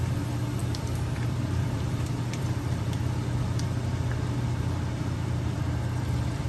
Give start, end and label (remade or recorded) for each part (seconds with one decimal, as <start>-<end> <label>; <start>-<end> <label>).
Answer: 0.0-0.6 recorded; 0.6-3.0 remade; 3.0-6.5 recorded